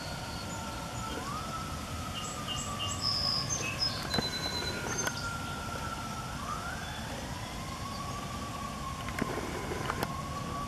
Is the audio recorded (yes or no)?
no